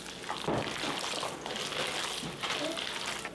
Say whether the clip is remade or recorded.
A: recorded